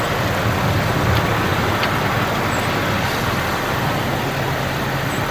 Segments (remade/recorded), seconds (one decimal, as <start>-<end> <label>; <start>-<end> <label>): 0.0-5.3 recorded